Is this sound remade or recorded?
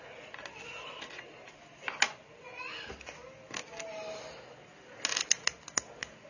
recorded